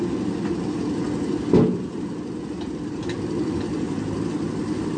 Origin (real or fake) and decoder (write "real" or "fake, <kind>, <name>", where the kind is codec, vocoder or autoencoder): real